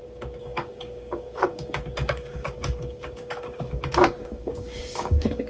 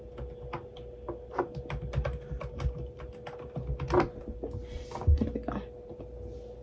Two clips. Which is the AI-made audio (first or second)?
first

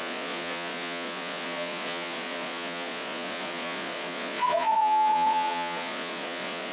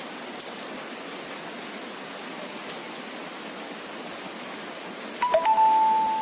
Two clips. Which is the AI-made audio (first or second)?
first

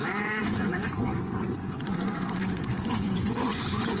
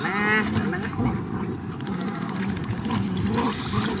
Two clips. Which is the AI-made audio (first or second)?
first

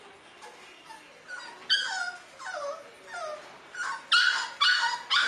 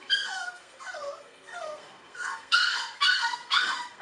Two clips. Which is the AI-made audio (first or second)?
second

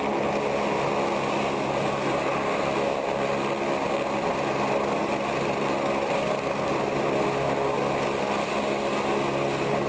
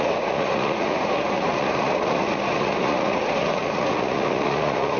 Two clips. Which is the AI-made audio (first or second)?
second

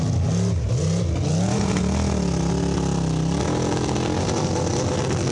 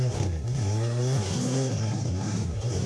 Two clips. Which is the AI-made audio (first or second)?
second